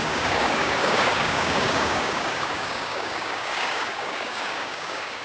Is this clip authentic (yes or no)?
no